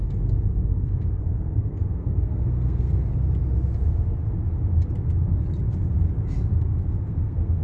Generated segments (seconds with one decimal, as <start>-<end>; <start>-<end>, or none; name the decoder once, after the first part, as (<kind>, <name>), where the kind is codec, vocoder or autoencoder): 0.0-3.1 (codec, SNAC); 6.6-7.6